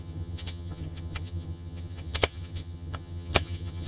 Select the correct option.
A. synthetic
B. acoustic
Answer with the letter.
A